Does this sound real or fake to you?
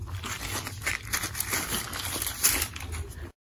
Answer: fake